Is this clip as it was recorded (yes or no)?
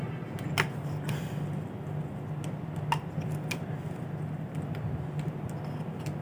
yes